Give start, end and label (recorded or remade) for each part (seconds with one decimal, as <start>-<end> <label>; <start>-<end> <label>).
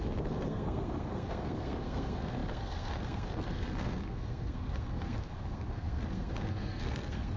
0.0-7.4 remade